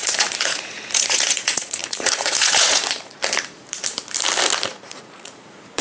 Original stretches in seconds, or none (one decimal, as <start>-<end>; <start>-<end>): 3.2-4.7